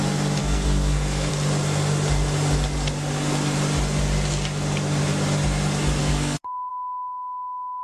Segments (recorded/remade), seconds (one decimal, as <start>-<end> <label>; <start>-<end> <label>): 0.0-0.4 recorded; 0.4-1.3 remade; 1.3-6.0 recorded; 6.0-6.7 remade; 6.7-7.8 recorded